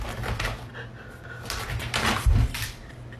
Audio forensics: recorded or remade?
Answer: recorded